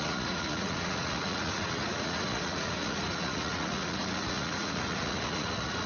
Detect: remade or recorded remade